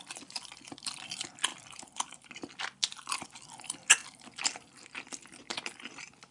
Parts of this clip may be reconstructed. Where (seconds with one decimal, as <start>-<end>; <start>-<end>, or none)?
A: none